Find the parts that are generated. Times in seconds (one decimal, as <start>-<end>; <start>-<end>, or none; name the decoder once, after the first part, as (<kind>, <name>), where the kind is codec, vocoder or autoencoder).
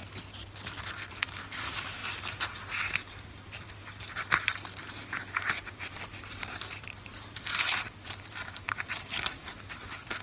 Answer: 1.1-2.0 (vocoder, BigVGAN v2); 4.1-5.9; 6.5-10.2